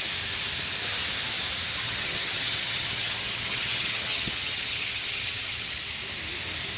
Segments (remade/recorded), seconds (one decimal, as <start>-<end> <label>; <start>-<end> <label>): 0.0-1.8 recorded; 1.8-5.8 remade; 5.8-6.8 recorded